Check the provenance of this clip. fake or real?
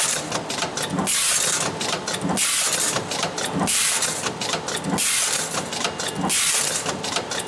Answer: real